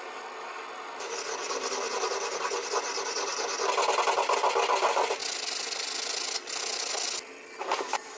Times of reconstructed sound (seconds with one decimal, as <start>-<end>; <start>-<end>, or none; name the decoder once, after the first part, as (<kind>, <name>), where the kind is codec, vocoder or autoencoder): none